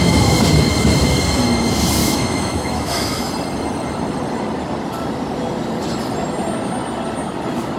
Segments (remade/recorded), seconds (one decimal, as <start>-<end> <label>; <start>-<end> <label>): 0.0-2.0 recorded; 2.0-3.3 remade; 3.3-7.8 recorded